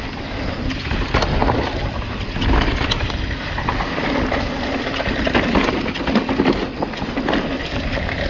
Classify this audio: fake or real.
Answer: real